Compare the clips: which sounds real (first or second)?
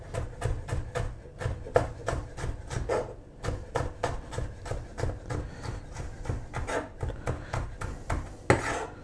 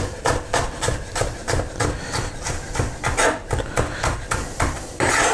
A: first